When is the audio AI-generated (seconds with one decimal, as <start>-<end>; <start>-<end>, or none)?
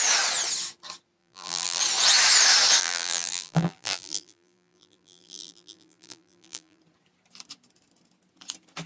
1.2-1.8; 2.8-6.8